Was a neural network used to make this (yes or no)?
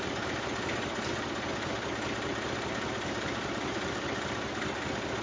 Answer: no